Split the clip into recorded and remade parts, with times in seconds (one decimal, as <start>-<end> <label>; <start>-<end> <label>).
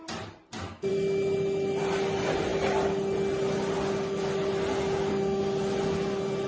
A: 0.0-6.5 recorded